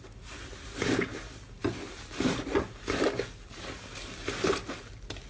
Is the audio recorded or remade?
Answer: recorded